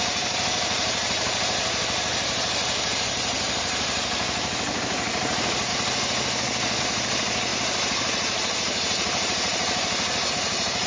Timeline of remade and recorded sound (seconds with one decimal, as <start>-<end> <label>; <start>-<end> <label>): 0.0-5.7 remade; 5.7-6.8 recorded; 6.8-10.9 remade